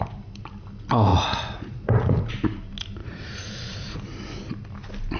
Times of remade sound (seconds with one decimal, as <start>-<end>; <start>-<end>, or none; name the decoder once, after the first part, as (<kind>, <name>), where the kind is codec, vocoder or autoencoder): 1.1-2.3 (vocoder, Vocos); 3.0-4.0

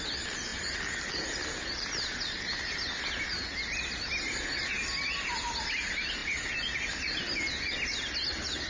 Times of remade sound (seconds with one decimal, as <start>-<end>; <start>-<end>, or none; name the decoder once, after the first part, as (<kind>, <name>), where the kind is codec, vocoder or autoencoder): none

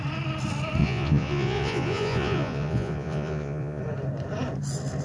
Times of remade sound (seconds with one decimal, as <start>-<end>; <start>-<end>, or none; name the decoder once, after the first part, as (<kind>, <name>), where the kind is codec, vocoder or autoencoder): 0.8-3.8 (vocoder, Vocos)

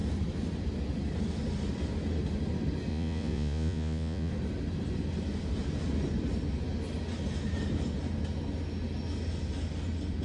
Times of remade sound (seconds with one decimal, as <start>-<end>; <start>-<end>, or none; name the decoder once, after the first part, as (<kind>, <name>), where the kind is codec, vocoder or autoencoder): 2.9-4.3 (vocoder, Vocos)

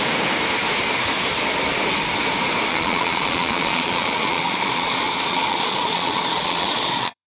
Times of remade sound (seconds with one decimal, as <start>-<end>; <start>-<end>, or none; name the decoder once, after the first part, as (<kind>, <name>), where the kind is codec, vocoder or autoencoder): 2.7-7.3 (vocoder, Vocos)